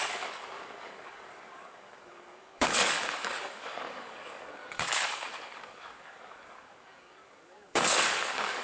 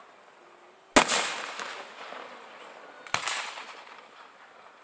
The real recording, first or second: second